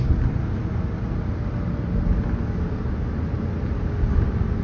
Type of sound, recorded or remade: recorded